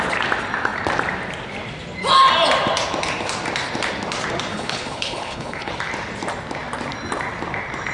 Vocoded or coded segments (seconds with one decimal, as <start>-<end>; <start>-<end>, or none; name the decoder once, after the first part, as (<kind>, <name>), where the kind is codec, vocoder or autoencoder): 4.5-5.7 (codec, HILCodec)